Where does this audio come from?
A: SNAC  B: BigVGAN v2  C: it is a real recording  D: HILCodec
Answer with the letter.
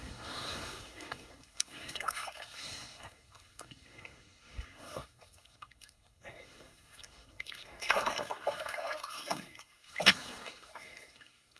A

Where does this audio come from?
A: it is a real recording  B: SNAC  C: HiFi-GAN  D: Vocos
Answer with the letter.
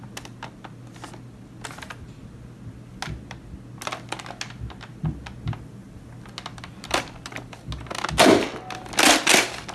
A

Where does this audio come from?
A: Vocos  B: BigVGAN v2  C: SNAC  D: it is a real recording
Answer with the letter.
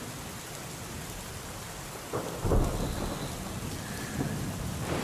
D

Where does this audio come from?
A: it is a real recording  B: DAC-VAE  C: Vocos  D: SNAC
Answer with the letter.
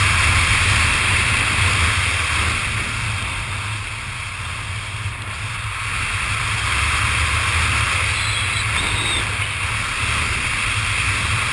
A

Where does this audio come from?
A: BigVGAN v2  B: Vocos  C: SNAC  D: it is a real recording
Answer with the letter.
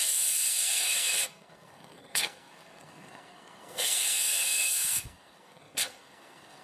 C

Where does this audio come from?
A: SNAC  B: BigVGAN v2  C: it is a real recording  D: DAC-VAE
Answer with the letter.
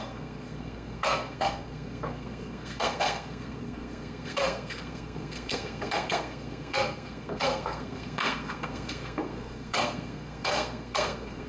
A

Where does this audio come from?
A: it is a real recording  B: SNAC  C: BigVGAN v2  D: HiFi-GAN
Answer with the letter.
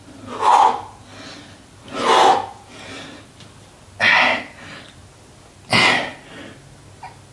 A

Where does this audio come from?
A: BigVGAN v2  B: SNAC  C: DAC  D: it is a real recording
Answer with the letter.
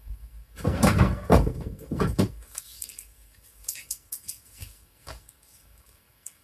B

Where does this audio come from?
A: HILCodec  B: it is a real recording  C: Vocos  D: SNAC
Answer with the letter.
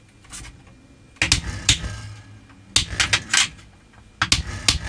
B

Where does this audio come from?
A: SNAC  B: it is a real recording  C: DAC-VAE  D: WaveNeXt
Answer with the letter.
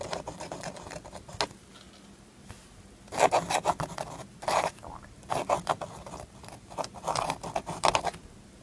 B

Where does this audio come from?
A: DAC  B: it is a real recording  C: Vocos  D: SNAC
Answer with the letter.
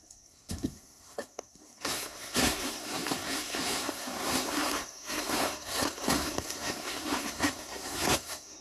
D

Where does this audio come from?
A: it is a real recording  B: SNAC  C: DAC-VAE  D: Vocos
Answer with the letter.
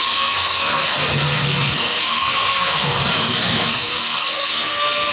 B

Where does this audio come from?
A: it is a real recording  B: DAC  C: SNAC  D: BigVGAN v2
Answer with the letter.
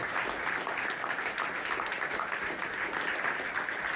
A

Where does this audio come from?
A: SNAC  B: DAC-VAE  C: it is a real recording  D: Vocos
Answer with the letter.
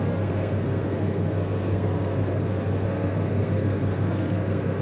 A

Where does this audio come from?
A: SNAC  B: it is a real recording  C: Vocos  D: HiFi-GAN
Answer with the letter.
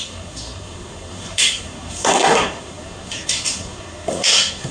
A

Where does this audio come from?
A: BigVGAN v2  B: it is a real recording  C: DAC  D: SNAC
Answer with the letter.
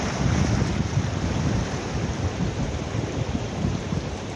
B